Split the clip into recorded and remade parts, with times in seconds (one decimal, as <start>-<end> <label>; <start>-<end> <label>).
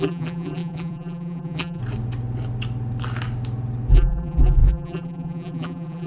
0.0-1.8 remade; 1.8-3.9 recorded; 3.9-6.1 remade